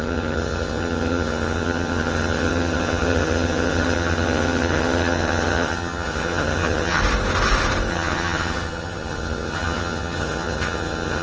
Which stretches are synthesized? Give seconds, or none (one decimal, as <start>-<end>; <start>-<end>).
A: 0.0-7.0; 7.9-11.2